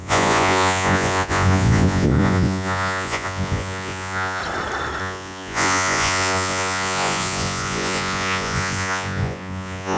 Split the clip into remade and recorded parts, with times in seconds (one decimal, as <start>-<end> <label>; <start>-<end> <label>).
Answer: 0.0-4.4 remade; 4.4-5.0 recorded; 5.0-10.0 remade